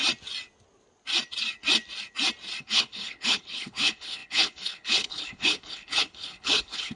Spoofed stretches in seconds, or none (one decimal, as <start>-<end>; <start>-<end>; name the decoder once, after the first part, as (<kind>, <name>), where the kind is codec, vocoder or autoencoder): 2.6-7.0 (codec, HILCodec)